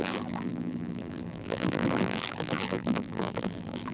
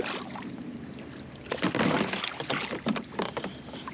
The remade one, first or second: first